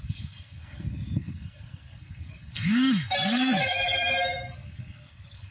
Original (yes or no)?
no